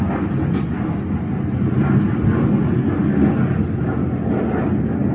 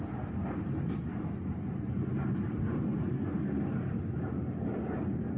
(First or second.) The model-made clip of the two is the second